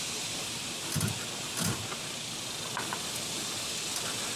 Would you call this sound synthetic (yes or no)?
no